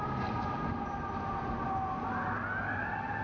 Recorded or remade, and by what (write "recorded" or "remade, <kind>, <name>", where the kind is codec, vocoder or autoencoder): recorded